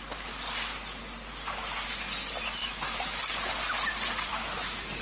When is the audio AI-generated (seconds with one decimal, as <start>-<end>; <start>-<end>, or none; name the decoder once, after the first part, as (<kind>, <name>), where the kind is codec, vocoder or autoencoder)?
2.6-3.2 (autoencoder, DAC-VAE); 4.3-5.0